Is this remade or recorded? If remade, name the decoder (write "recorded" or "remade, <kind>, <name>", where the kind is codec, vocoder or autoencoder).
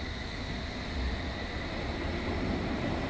recorded